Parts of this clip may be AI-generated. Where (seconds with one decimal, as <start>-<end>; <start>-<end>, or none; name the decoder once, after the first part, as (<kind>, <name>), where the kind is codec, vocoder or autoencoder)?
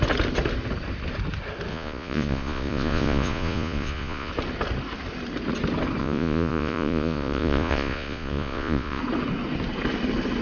1.7-4.3 (vocoder, Vocos); 6.0-9.0